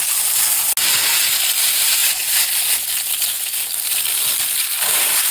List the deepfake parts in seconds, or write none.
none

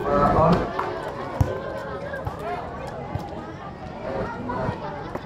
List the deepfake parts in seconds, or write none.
1.2-5.3 (vocoder, BigVGAN v2)

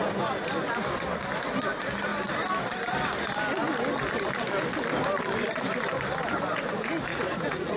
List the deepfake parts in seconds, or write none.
7.1-7.8 (vocoder, Vocos)

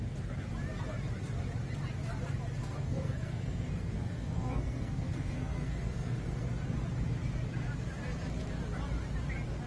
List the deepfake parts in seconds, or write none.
2.6-6.5 (codec, SNAC)